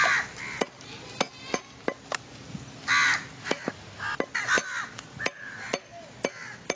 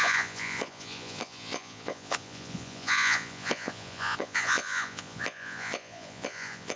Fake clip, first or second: second